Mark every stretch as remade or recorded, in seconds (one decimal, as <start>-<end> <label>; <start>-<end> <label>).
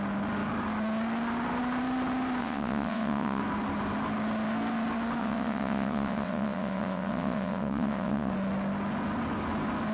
0.0-2.4 recorded; 2.4-3.4 remade; 3.4-5.2 recorded; 5.2-8.3 remade; 8.3-9.9 recorded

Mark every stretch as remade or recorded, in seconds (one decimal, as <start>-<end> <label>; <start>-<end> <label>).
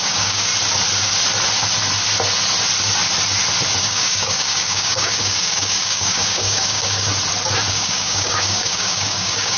0.0-0.5 remade; 0.5-3.8 recorded; 3.8-7.1 remade; 7.1-7.7 recorded; 7.7-9.6 remade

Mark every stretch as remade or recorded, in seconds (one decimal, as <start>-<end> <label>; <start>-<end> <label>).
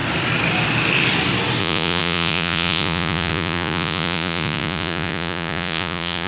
0.0-1.6 recorded; 1.6-6.3 remade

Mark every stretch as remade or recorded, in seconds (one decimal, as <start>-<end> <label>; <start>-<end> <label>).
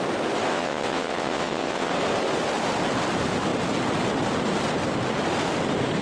0.0-0.5 recorded; 0.5-1.9 remade; 1.9-6.0 recorded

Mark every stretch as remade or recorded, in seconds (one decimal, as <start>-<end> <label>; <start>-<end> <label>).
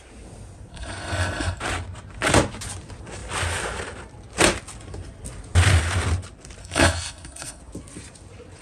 0.0-0.7 recorded; 0.7-1.6 remade; 1.6-6.6 recorded; 6.6-7.6 remade; 7.6-8.6 recorded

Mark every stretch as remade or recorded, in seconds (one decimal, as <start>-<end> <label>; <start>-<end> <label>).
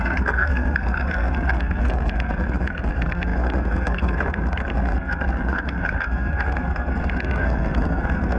0.0-8.4 remade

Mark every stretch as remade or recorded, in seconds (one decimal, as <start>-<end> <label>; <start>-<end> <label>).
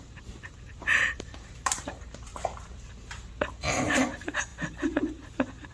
0.0-2.3 remade; 2.3-3.1 recorded; 3.1-4.5 remade; 4.5-5.2 recorded; 5.2-5.7 remade